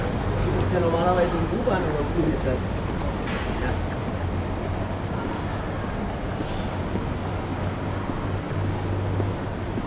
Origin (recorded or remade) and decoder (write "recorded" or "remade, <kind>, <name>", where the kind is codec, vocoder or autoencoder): recorded